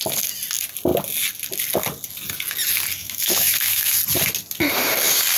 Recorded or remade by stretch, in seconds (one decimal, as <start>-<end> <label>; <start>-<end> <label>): 0.0-3.0 recorded; 3.0-4.0 remade; 4.0-5.4 recorded